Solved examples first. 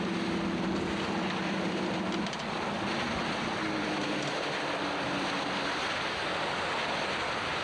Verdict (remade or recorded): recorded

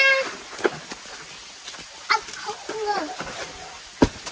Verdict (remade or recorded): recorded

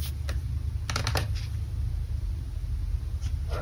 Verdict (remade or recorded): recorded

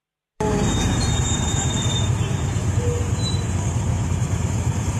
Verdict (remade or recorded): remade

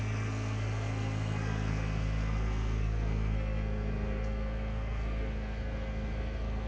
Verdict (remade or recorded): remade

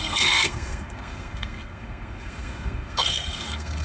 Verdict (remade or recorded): remade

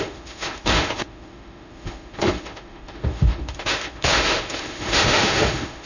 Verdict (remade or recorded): remade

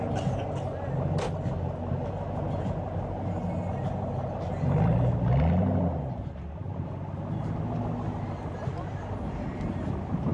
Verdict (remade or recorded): recorded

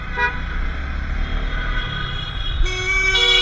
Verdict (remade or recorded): recorded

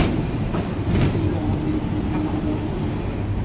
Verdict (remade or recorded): recorded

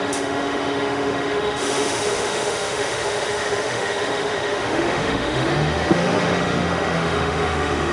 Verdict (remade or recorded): remade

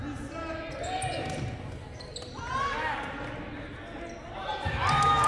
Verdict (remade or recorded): recorded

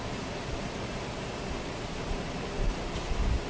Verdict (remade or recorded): recorded